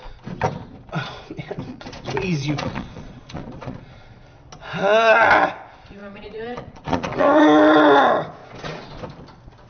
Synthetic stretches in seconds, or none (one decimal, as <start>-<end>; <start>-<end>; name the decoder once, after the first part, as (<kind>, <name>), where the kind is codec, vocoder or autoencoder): 1.7-4.3 (vocoder, Vocos); 6.0-7.4; 8.4-9.0